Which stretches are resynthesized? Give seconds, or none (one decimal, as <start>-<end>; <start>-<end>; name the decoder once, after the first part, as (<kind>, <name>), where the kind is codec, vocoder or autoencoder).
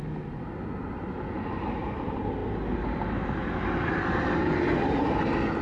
none